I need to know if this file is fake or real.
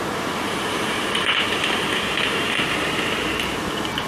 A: fake